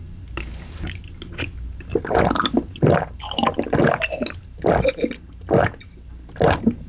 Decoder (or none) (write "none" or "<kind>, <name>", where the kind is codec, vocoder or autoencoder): none